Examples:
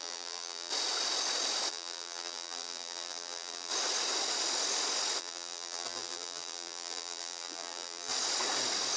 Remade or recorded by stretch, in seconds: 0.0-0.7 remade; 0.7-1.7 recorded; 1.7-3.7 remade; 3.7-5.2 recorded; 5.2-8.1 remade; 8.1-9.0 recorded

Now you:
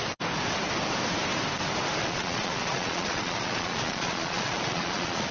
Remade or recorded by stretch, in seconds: 0.0-2.0 recorded; 2.0-5.3 remade

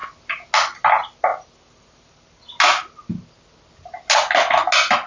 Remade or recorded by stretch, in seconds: 0.0-5.1 recorded

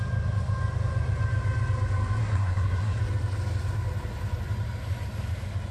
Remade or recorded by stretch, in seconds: 0.0-2.2 recorded; 2.2-3.0 remade; 3.0-5.7 recorded

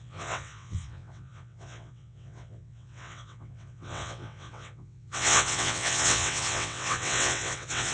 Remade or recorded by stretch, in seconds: 0.0-7.9 remade